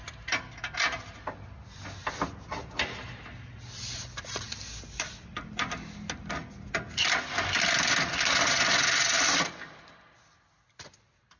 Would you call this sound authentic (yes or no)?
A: yes